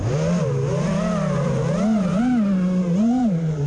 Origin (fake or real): real